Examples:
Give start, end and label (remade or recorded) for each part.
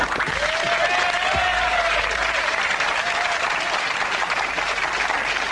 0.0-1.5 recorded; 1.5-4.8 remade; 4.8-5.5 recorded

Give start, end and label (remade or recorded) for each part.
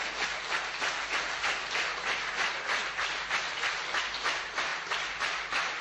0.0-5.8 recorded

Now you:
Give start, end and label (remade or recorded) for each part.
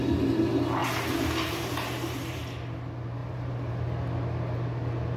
0.0-0.8 recorded; 0.8-2.4 remade; 2.4-3.2 recorded; 3.2-3.7 remade; 3.7-5.2 recorded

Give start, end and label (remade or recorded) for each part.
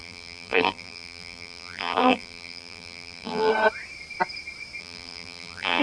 0.0-3.5 remade; 3.5-4.8 recorded; 4.8-5.8 remade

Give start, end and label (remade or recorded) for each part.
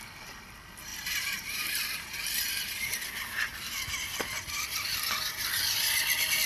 0.0-0.9 recorded; 0.9-2.0 remade; 2.0-6.5 recorded